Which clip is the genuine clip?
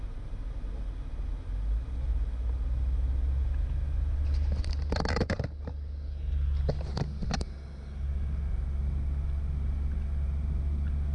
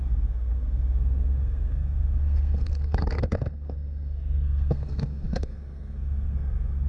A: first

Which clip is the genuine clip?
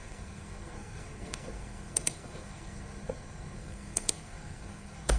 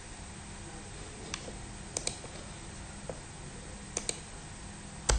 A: second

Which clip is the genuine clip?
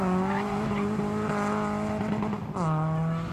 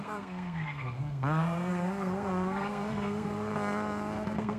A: first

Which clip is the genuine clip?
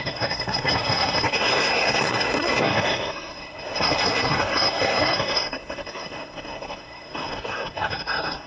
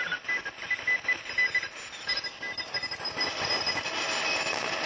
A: second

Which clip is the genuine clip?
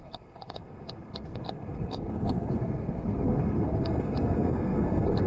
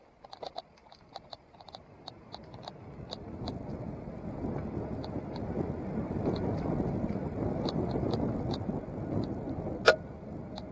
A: second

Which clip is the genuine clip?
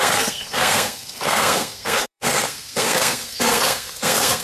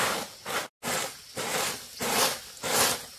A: second